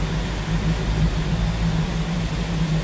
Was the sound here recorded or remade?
recorded